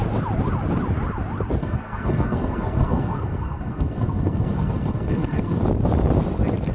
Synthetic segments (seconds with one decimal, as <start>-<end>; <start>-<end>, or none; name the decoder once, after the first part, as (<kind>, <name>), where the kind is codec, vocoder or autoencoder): 1.6-5.6 (codec, SNAC)

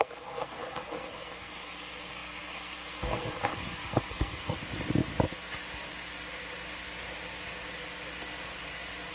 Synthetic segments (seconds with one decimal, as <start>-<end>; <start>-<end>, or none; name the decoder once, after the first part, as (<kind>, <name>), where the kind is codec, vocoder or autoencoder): 0.0-4.6 (codec, SNAC)

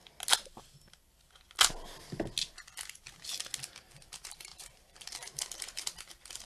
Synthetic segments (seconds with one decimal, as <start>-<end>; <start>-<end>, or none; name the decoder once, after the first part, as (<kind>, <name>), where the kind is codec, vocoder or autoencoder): 3.8-6.4 (vocoder, BigVGAN v2)

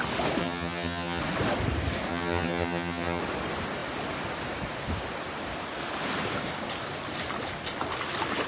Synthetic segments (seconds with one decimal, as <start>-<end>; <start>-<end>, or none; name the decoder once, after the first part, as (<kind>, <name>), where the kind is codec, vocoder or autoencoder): 0.4-1.2 (vocoder, HiFi-GAN); 2.1-3.2

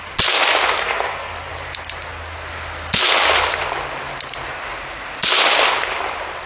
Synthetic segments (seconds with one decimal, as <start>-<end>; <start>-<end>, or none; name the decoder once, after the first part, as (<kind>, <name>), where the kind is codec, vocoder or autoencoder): 0.8-1.5 (codec, SNAC)